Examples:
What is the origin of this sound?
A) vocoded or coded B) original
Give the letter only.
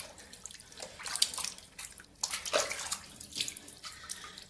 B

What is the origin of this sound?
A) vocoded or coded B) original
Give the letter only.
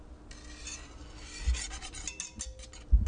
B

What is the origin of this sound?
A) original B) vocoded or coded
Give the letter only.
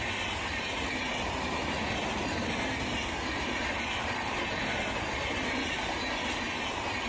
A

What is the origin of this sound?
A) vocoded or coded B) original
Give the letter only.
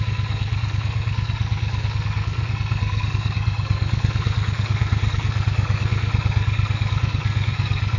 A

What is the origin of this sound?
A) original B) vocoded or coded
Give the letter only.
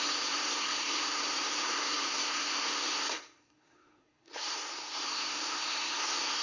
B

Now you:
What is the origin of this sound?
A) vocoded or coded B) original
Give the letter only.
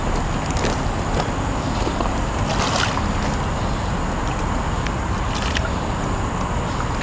B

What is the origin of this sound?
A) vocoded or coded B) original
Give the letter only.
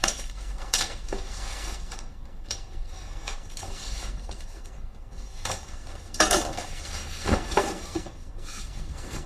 A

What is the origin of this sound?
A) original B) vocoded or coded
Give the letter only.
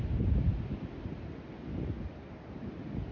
A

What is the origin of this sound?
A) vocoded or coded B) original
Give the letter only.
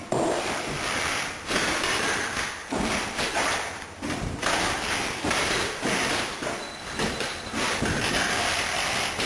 B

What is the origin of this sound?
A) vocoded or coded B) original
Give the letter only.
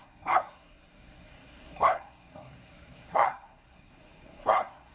A